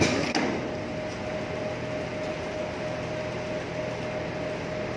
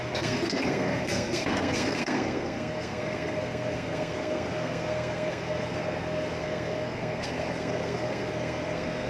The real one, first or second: first